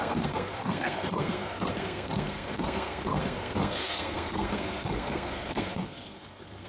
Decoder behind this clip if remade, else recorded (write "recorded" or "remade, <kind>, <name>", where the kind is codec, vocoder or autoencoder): remade, codec, SNAC